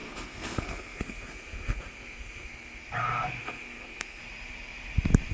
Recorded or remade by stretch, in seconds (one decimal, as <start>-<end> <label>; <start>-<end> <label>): 0.0-2.8 remade; 2.8-3.4 recorded; 3.4-4.2 remade; 4.2-5.3 recorded